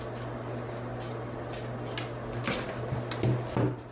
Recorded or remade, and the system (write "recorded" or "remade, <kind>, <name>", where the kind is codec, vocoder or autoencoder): recorded